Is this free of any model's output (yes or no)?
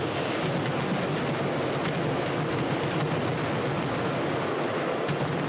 yes